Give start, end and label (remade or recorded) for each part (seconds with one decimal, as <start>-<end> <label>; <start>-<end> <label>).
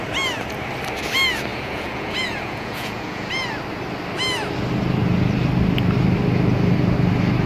0.0-1.5 recorded; 1.5-3.3 remade; 3.3-7.5 recorded